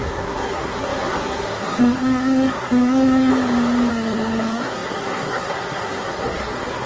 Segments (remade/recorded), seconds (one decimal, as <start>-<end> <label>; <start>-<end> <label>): 0.0-3.3 remade; 3.3-3.9 recorded; 3.9-6.9 remade